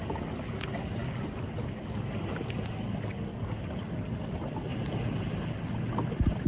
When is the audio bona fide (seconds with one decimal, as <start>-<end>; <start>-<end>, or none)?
0.0-6.5